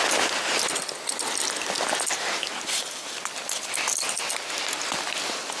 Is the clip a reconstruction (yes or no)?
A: no